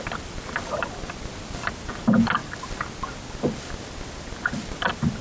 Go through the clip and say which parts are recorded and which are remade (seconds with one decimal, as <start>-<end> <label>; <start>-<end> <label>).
0.0-5.2 recorded